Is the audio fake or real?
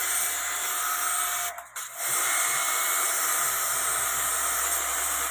real